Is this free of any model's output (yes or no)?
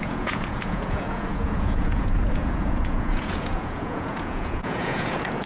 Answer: no